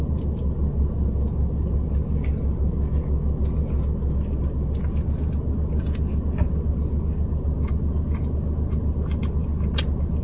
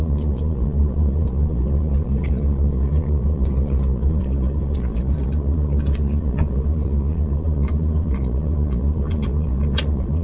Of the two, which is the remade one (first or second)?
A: second